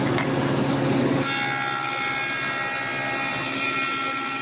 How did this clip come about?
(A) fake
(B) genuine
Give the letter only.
B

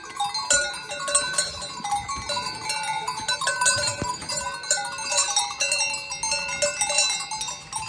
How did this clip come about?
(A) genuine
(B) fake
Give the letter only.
A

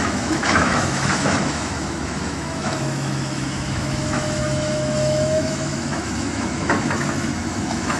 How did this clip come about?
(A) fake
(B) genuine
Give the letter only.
A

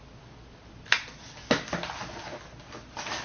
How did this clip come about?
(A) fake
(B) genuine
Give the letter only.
B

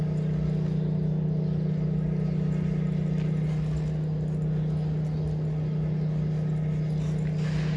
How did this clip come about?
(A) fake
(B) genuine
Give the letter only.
B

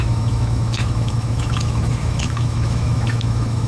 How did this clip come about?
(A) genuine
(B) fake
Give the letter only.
B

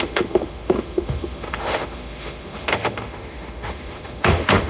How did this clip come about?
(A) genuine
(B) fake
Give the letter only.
B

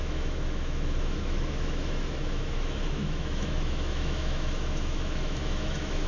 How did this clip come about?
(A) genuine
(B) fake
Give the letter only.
B